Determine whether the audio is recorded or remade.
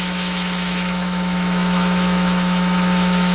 remade